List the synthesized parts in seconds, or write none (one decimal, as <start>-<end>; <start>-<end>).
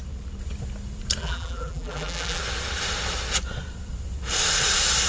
1.2-2.4